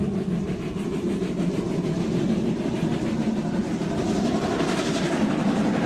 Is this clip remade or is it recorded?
recorded